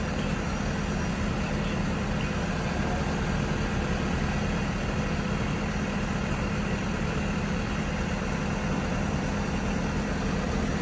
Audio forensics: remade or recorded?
recorded